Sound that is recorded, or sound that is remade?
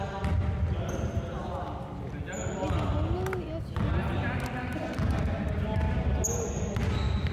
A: recorded